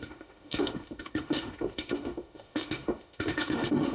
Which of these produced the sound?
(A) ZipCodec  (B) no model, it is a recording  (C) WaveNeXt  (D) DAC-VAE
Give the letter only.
D